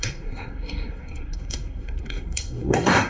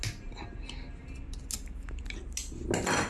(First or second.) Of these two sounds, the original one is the second